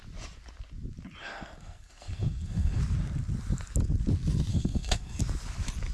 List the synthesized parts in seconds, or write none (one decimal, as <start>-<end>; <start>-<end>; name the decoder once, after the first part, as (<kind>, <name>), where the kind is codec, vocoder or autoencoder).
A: 1.2-2.8 (codec, SNAC); 4.5-5.2